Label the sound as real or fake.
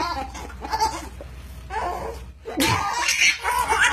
real